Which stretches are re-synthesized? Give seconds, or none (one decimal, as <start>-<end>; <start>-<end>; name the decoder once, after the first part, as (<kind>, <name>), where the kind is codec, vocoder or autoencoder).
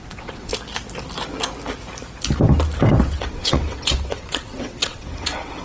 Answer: 0.0-0.5 (vocoder, WaveNeXt); 3.0-5.6